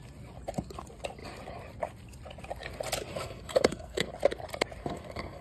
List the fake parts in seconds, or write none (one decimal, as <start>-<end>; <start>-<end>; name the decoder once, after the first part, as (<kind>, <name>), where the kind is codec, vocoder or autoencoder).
3.1-4.1 (codec, SNAC); 4.8-5.4